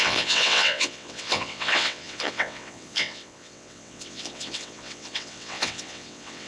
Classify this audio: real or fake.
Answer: fake